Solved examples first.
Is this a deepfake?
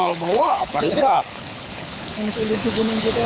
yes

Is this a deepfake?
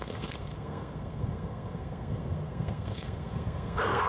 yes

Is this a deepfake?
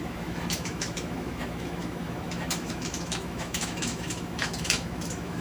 yes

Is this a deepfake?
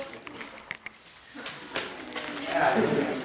no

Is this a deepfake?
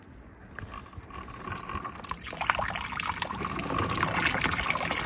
no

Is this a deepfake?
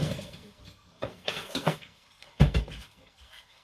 yes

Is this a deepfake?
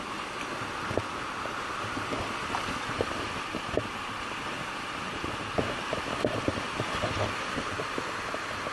no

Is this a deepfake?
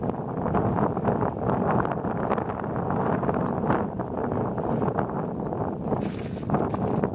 no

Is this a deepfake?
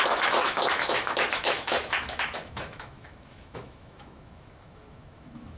yes